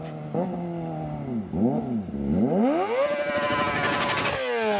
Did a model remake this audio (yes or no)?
no